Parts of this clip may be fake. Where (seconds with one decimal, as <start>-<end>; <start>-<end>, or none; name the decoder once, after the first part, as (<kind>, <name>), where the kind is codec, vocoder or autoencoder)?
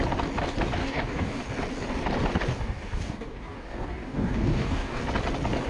0.8-1.4 (codec, DAC); 2.5-5.0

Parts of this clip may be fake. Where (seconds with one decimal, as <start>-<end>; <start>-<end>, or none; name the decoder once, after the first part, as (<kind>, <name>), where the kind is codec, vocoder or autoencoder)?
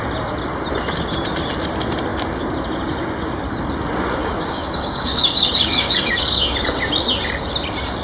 4.2-6.2 (codec, DAC)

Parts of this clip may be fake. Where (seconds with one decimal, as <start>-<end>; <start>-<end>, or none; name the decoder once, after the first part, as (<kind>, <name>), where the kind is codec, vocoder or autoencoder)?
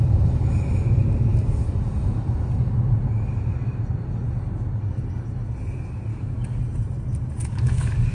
6.1-6.6 (codec, DAC); 7.4-8.1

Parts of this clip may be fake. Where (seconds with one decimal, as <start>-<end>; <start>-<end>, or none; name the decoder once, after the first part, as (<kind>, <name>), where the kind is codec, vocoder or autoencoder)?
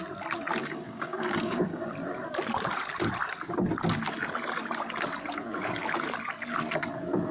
0.6-1.9 (codec, DAC)